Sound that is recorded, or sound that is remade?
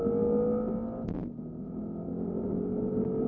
recorded